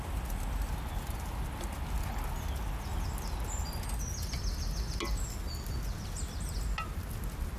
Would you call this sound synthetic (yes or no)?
no